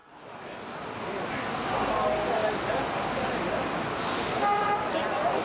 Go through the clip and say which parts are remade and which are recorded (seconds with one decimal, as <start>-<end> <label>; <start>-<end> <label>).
0.0-5.4 recorded